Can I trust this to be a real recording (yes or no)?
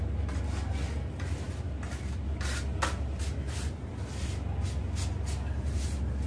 yes